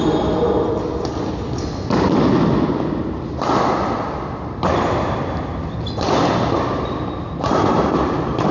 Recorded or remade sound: recorded